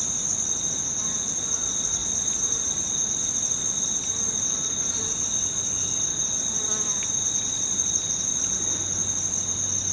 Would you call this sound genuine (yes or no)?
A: yes